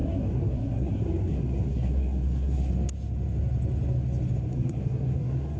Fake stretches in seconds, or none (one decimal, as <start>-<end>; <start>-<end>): 0.0-2.7; 4.5-5.6